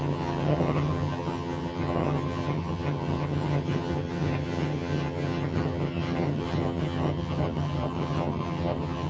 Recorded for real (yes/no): no